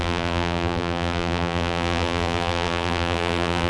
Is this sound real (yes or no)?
no